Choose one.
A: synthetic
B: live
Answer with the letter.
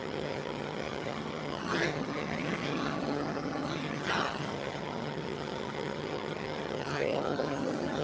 A